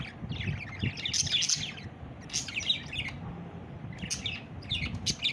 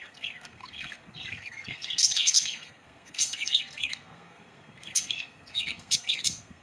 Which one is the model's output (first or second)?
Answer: second